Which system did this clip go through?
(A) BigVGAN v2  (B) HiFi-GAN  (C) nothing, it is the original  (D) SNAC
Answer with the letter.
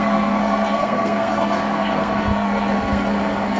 D